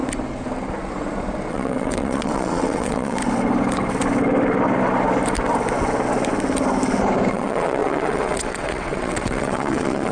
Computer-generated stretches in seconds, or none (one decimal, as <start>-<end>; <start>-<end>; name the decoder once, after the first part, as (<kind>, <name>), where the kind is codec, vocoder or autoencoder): 1.5-3.2 (vocoder, WaveNeXt); 7.3-10.1